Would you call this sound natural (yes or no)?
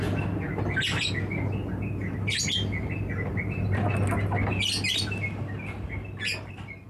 yes